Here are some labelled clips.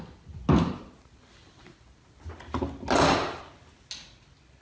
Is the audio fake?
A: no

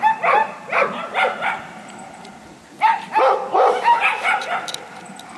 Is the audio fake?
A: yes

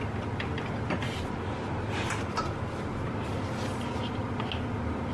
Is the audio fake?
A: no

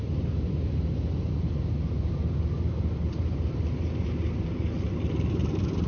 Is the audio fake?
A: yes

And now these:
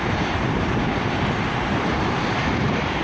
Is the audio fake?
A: yes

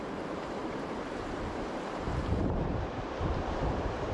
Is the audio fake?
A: yes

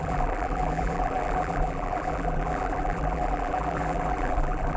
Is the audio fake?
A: yes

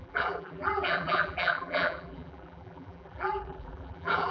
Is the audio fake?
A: yes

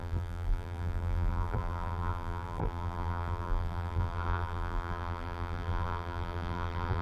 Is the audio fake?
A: yes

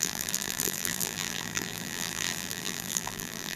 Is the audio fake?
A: yes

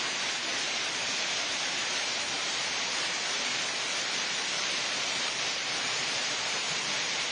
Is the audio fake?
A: yes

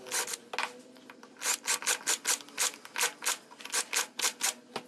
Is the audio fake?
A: no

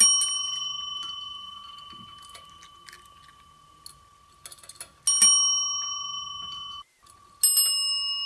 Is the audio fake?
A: no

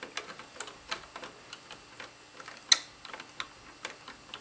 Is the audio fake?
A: no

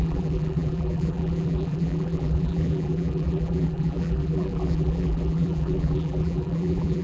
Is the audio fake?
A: yes